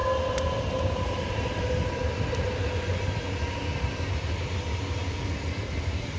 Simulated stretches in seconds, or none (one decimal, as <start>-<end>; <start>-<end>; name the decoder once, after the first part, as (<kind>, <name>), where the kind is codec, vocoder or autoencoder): 1.1-2.0 (vocoder, BigVGAN v2); 5.7-6.2